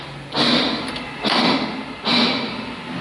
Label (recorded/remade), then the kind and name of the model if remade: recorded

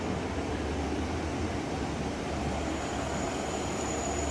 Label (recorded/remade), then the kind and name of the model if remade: recorded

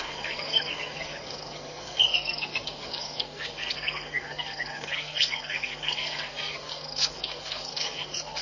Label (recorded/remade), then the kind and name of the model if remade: remade, codec, SNAC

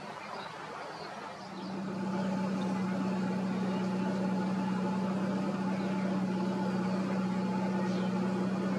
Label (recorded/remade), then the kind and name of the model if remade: recorded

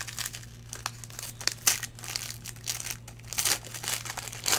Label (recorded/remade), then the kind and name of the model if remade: recorded